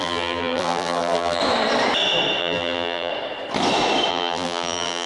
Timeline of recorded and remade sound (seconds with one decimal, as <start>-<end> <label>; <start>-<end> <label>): 0.0-1.4 remade; 1.4-2.4 recorded; 2.4-3.1 remade; 3.1-4.1 recorded; 4.1-5.1 remade